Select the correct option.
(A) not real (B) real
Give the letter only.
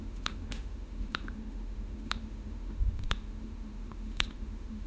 A